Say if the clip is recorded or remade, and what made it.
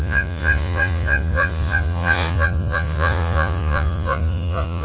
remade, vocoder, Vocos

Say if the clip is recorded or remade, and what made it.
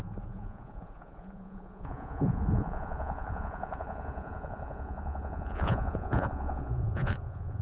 remade, vocoder, Vocos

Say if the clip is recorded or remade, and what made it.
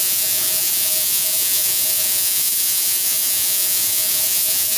remade, vocoder, Vocos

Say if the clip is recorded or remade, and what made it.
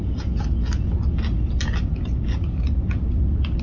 recorded